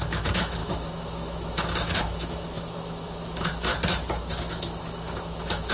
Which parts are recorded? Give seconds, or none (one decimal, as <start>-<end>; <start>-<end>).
3.7-4.4